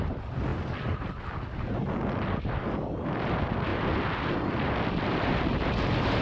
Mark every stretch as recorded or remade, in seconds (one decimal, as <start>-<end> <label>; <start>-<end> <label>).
0.0-6.2 recorded